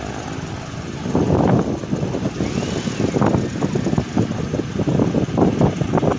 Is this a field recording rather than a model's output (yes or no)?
yes